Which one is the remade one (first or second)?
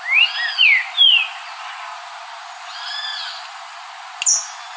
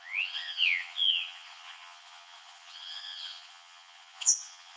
second